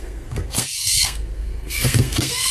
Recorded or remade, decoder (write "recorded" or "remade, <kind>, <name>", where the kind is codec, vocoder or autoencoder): remade, codec, SNAC